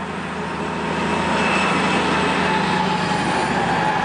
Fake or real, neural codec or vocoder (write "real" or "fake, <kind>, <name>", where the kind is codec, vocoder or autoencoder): real